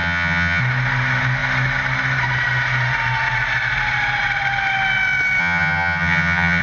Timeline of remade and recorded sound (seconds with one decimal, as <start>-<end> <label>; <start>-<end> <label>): 0.0-0.6 remade; 0.6-5.4 recorded; 5.4-6.6 remade